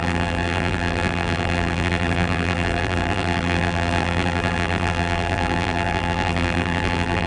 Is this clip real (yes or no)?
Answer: no